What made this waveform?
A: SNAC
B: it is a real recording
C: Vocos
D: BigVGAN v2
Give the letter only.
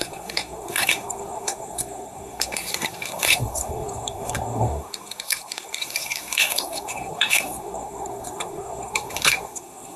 A